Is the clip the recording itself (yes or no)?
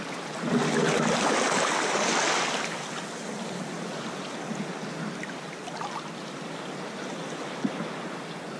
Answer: yes